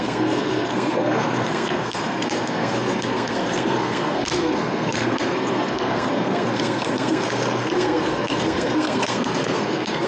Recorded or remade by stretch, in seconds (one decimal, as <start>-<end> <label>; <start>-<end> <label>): 0.0-10.1 remade